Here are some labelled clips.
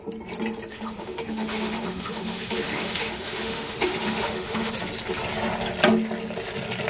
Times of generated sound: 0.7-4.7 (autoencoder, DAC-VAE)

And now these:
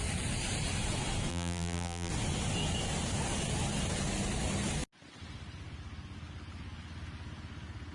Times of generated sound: 1.3-2.1 (vocoder, BigVGAN v2)

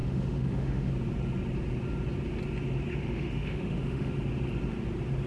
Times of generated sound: 0.0-0.9 (autoencoder, DAC-VAE); 2.9-4.1

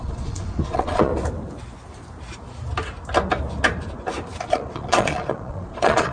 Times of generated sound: 0.0-1.1 (vocoder, Vocos); 4.5-6.1

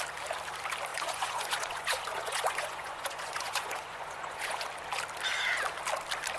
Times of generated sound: 0.9-4.7 (vocoder, Vocos)

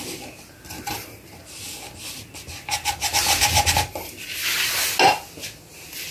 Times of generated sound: none

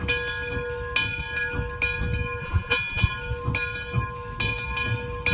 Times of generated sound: 2.4-3.1 (vocoder, Vocos)